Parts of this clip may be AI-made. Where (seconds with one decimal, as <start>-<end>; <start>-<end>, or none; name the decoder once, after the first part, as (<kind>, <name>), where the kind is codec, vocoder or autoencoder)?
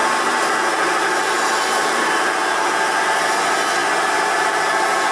none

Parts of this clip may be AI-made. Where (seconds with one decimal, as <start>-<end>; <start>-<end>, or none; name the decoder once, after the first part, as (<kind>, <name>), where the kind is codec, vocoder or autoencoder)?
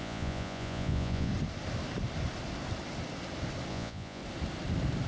0.0-1.3 (vocoder, Vocos); 3.7-4.2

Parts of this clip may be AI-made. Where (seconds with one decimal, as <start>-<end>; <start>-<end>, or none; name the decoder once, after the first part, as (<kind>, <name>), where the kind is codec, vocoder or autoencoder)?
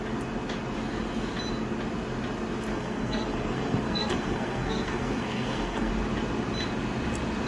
2.7-5.9 (codec, SNAC)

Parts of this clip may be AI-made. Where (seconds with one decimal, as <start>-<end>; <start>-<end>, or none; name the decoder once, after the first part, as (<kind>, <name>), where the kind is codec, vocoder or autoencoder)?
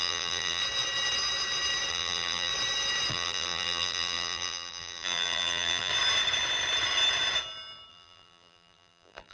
0.0-0.6 (vocoder, BigVGAN v2); 1.9-2.5; 3.1-5.9; 7.9-9.3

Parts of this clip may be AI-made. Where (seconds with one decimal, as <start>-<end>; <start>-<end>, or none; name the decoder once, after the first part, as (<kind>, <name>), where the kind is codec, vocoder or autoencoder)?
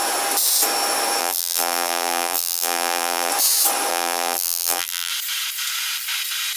1.2-3.3 (vocoder, BigVGAN v2); 3.9-5.1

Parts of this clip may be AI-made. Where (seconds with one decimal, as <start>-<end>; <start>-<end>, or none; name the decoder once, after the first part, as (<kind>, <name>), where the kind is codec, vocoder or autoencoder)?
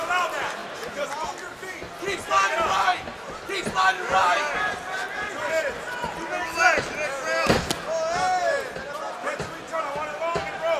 0.6-1.3 (vocoder, BigVGAN v2); 4.2-5.1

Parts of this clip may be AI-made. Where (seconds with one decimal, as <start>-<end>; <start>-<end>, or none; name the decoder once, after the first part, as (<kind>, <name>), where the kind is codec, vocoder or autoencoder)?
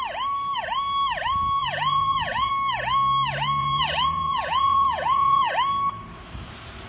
1.6-2.5 (vocoder, Vocos); 3.6-5.5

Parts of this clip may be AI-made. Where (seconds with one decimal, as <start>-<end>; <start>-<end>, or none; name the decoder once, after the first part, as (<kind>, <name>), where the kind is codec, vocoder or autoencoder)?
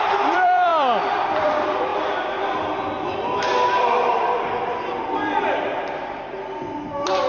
0.0-1.9 (vocoder, BigVGAN v2); 3.8-7.3